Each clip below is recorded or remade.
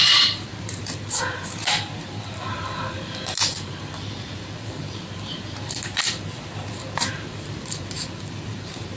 remade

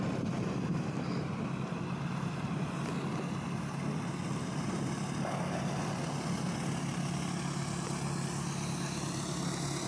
recorded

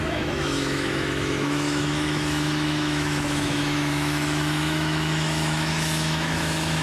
remade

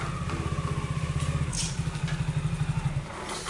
recorded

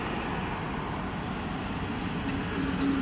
recorded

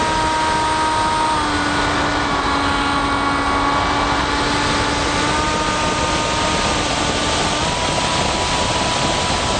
recorded